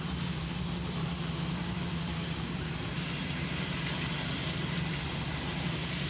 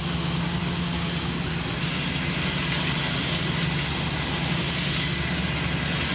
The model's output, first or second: first